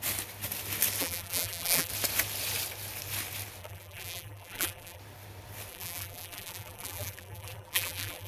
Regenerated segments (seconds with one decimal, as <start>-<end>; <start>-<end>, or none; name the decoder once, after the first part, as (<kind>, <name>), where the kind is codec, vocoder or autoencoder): 1.0-1.9 (vocoder, BigVGAN v2); 3.6-5.0; 5.7-8.3